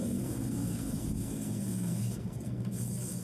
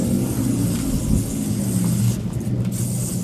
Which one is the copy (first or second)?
first